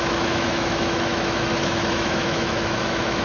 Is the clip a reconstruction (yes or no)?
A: yes